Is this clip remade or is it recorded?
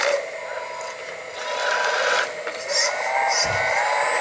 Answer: recorded